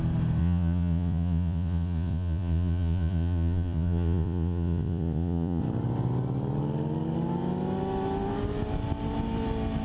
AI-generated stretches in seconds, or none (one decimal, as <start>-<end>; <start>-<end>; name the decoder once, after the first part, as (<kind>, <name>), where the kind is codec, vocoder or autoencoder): 0.4-5.6 (vocoder, Vocos)

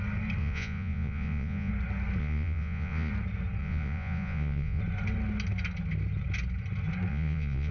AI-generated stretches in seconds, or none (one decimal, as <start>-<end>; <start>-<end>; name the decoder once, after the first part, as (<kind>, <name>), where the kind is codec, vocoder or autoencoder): 0.4-1.7 (vocoder, Vocos); 2.2-3.1; 3.6-4.8; 7.1-7.7